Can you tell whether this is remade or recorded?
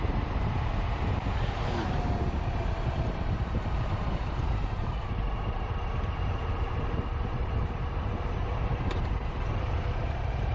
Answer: remade